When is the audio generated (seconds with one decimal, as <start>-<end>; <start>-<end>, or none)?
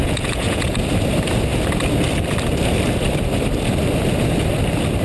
0.0-0.8